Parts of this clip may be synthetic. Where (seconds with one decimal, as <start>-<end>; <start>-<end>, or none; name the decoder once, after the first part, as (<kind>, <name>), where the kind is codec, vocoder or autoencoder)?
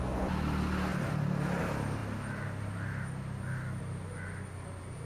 none